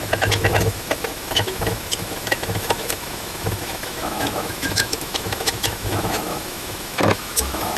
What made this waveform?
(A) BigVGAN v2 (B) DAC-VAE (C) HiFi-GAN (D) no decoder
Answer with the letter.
B